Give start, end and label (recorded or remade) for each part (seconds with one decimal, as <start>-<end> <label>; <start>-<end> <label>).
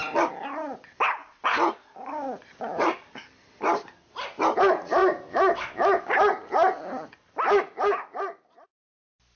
0.0-5.0 recorded; 5.0-6.1 remade; 6.1-9.4 recorded